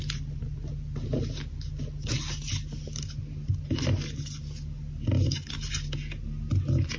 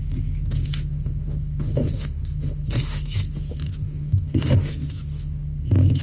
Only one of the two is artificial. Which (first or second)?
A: second